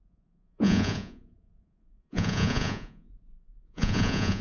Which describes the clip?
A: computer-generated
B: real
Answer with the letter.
A